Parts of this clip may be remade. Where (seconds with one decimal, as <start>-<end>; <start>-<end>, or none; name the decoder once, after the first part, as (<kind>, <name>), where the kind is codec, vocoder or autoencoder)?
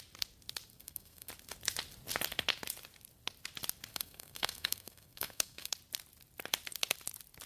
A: 0.7-1.3 (codec, SNAC); 3.9-5.7